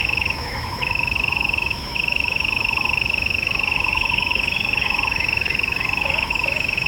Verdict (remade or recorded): remade